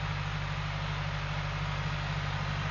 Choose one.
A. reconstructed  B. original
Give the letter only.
B